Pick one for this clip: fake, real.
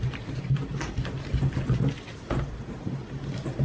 real